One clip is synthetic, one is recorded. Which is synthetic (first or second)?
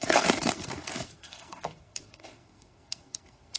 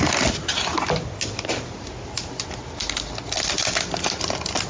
first